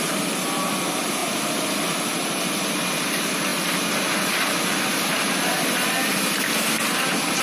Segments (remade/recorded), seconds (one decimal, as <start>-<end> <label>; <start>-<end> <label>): 0.0-7.4 recorded